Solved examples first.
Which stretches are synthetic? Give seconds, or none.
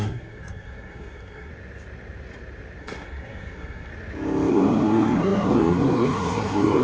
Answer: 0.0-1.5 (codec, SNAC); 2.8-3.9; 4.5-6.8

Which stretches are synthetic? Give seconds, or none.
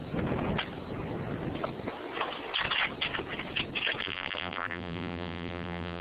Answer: 4.0-6.0 (vocoder, BigVGAN v2)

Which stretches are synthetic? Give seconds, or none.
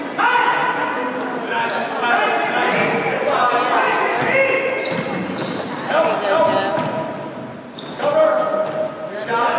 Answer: none